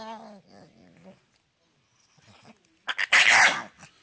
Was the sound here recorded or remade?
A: recorded